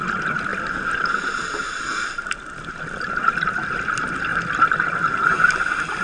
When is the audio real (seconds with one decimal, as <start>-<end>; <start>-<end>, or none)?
0.0-6.0